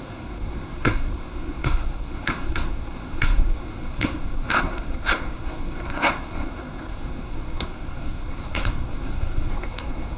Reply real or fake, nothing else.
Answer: fake